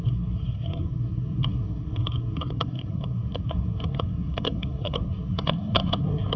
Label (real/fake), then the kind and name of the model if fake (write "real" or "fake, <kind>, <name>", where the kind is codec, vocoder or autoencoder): fake, codec, SNAC